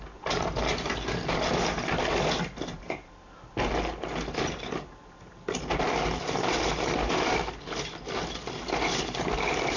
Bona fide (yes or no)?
yes